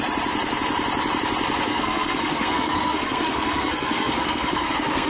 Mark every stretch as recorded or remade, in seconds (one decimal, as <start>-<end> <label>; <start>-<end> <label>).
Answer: 0.0-1.7 recorded; 1.7-5.1 remade